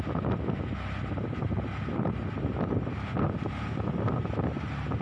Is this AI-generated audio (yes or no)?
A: no